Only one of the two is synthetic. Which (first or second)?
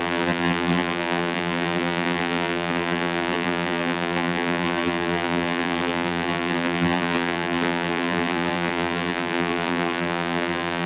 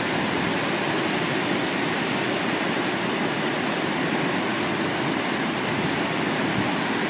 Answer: first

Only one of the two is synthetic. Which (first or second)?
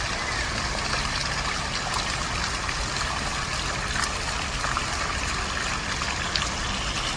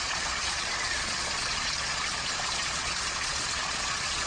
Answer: second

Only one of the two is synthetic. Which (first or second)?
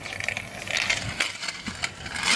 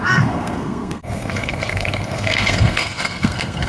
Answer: second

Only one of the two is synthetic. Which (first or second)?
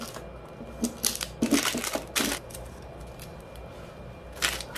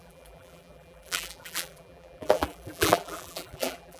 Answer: second